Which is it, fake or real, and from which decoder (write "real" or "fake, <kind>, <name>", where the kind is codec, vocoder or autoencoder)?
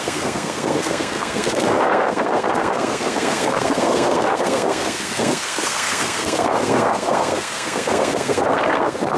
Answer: fake, codec, SNAC